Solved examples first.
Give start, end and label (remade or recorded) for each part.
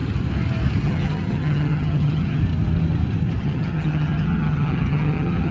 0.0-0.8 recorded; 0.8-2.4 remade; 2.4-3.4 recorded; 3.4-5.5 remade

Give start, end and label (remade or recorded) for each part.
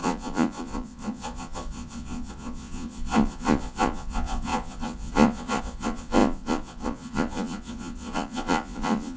0.0-9.2 remade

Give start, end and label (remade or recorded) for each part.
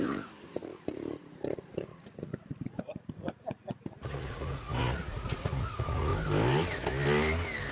0.0-6.1 remade; 6.1-7.7 recorded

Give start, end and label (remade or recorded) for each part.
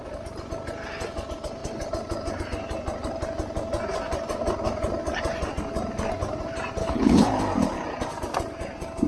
0.0-6.8 recorded; 6.8-7.4 remade; 7.4-9.1 recorded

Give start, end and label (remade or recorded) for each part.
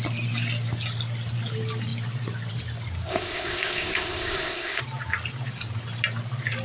0.0-3.1 recorded; 3.1-4.8 remade; 4.8-6.6 recorded